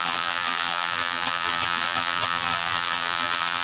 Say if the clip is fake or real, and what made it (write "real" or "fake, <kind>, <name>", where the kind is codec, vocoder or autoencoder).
fake, vocoder, BigVGAN v2